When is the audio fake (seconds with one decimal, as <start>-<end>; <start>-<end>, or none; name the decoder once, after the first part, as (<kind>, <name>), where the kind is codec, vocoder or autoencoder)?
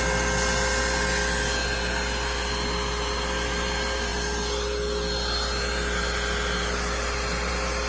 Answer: none